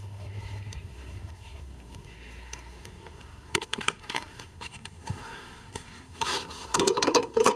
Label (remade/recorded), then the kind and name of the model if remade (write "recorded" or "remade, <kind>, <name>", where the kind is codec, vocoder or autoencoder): remade, codec, SNAC